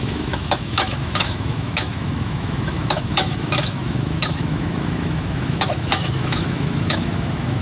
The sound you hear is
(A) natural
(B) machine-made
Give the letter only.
B